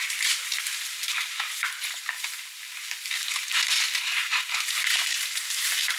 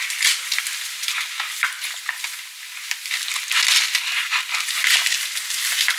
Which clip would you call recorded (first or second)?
second